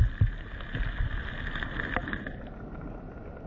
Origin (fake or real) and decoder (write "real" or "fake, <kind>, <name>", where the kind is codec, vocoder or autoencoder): real